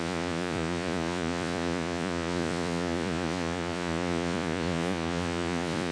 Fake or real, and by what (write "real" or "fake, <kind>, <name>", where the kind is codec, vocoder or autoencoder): fake, vocoder, Vocos